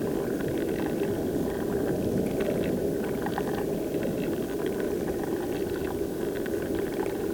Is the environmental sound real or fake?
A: real